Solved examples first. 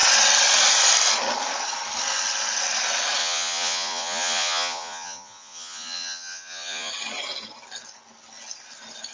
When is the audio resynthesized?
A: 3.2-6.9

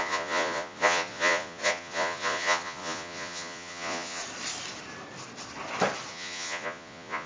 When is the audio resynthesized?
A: 0.0-4.2; 6.1-7.3

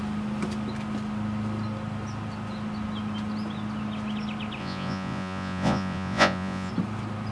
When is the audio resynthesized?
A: 4.6-6.7

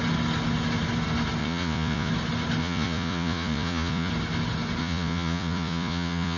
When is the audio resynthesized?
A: 1.4-2.1; 2.6-4.1; 4.8-6.4